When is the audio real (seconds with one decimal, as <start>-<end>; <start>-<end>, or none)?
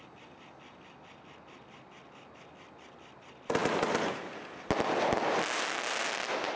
0.0-6.6